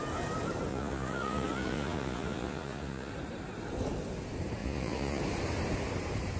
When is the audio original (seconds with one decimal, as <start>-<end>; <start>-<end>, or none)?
0.0-0.7; 3.1-4.6; 5.2-6.4